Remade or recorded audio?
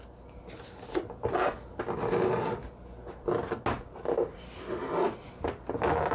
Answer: recorded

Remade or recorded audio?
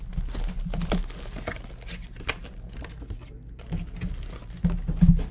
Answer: recorded